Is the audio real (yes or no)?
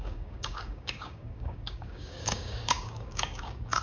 no